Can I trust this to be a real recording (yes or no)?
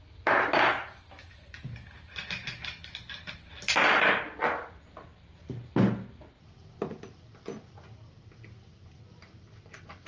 yes